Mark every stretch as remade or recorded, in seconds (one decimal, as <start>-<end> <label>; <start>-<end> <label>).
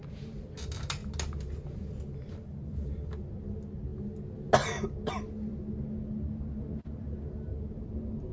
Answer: 0.0-8.3 recorded